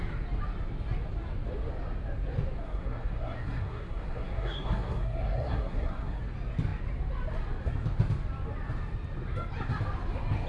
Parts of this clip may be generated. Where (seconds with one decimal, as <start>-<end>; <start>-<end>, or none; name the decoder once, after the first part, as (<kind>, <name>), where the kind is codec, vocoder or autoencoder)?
2.6-6.2 (codec, SNAC)